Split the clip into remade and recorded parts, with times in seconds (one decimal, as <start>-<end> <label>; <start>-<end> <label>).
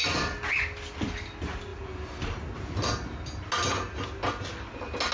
0.0-5.1 recorded